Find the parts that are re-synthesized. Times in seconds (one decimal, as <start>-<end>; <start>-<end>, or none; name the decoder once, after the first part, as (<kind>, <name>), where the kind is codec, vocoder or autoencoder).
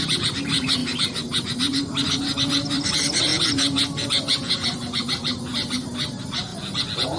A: 0.0-3.3 (vocoder, BigVGAN v2); 4.5-6.5